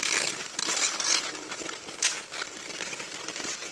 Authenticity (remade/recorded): recorded